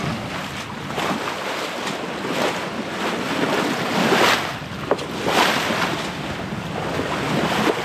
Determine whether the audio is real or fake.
real